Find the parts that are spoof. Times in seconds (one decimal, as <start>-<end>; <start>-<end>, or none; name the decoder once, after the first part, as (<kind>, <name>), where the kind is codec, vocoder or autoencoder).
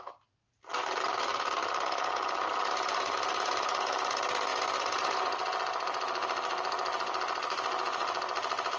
none